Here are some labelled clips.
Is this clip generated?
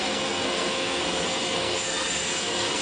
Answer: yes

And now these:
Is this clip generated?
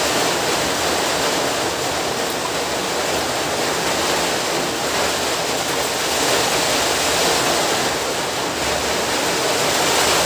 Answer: no